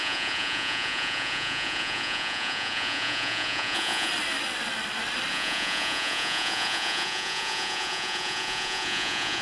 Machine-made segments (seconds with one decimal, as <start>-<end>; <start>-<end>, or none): 0.0-4.1; 5.3-9.4